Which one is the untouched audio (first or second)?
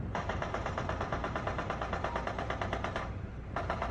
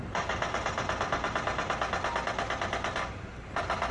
second